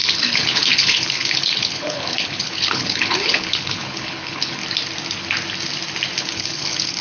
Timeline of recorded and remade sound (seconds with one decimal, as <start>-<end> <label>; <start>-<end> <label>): 0.0-4.6 remade; 4.6-6.2 recorded; 6.2-7.0 remade

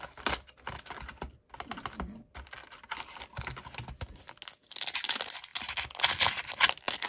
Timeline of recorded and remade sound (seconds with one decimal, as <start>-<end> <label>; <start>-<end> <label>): 0.0-7.1 recorded